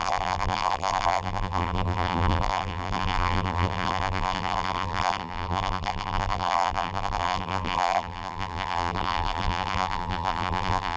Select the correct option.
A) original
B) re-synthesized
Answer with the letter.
B